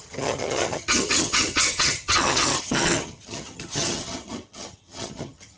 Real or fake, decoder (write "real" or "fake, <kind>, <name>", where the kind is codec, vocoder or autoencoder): fake, vocoder, HiFi-GAN